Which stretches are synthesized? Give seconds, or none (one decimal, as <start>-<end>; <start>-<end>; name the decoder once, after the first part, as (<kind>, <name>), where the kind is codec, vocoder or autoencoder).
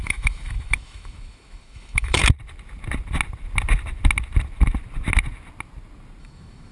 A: 0.0-2.2 (autoencoder, DAC-VAE); 6.2-6.7